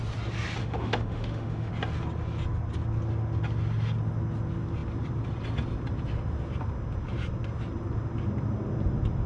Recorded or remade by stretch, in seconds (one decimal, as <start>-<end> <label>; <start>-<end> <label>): 0.0-0.6 recorded; 0.6-1.7 remade; 1.7-9.3 recorded